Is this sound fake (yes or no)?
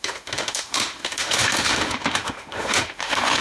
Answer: yes